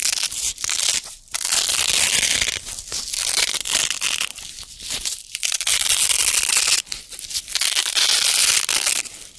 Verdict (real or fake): real